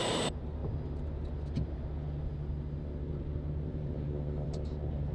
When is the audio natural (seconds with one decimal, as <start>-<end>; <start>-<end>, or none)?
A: 0.6-3.1